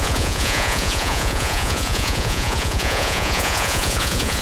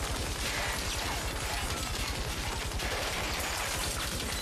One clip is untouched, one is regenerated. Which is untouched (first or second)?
second